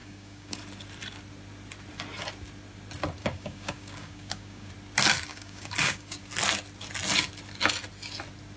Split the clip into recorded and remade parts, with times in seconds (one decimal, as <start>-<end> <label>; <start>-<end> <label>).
0.0-0.6 remade; 0.6-3.2 recorded; 3.2-4.7 remade; 4.7-5.3 recorded; 5.3-6.3 remade; 6.3-8.6 recorded